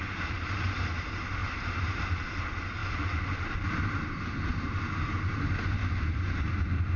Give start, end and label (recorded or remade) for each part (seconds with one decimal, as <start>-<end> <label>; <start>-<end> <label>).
0.0-0.9 remade; 0.9-1.4 recorded; 1.4-2.2 remade; 2.2-2.8 recorded; 2.8-7.0 remade